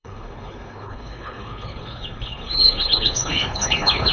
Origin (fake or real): fake